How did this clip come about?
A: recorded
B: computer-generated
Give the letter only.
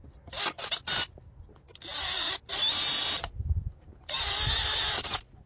A